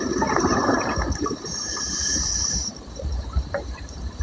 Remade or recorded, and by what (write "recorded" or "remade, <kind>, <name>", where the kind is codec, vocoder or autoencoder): remade, vocoder, BigVGAN v2